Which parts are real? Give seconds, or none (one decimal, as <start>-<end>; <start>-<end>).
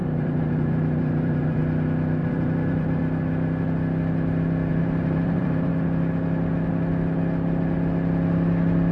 1.6-2.2; 3.0-4.7; 5.7-8.9